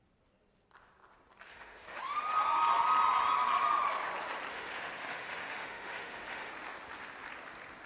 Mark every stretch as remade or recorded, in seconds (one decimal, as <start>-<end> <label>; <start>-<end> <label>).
0.0-1.5 recorded; 1.5-2.0 remade; 2.0-4.5 recorded; 4.5-6.5 remade; 6.5-7.9 recorded